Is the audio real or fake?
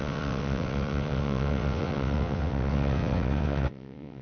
fake